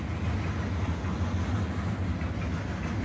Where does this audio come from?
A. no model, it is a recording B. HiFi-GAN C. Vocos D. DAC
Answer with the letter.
A